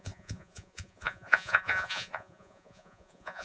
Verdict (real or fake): fake